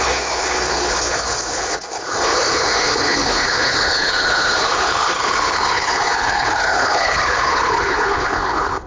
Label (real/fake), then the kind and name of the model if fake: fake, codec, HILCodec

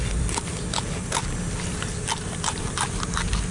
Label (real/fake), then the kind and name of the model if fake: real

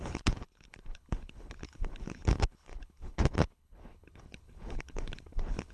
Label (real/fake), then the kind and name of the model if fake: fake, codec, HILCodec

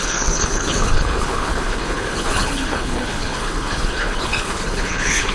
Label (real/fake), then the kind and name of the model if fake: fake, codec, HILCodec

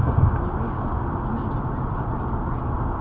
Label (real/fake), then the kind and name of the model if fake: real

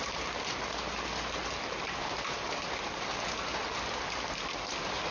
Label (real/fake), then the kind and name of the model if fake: real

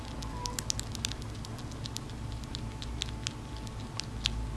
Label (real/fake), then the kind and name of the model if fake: real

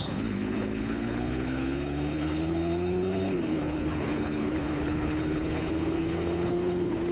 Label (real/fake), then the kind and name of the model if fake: fake, codec, HILCodec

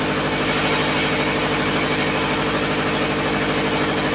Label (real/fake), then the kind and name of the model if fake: real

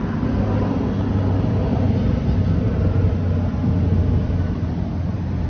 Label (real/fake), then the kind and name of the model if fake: real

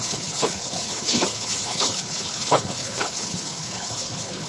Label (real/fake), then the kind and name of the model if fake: fake, codec, HILCodec